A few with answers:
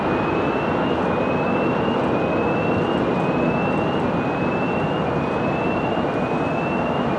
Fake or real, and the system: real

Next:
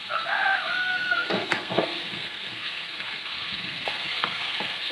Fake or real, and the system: fake, codec, SNAC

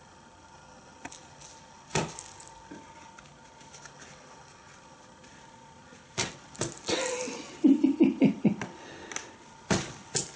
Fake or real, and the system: real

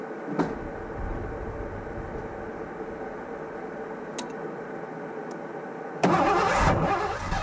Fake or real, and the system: real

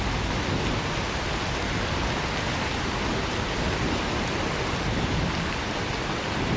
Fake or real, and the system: real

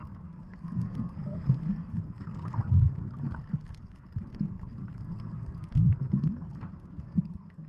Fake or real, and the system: fake, codec, SNAC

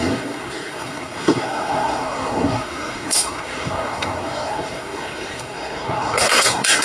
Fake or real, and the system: fake, codec, SNAC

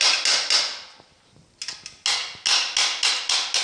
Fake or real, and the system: real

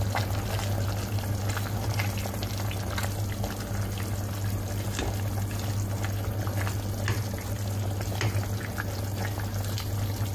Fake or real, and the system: real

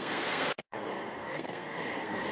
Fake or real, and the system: fake, codec, SNAC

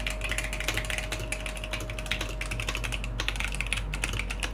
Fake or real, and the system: real